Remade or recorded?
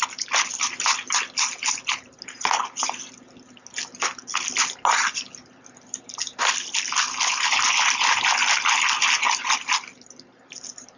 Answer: recorded